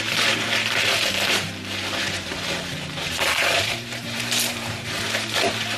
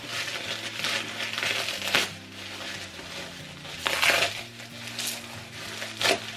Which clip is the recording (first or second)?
second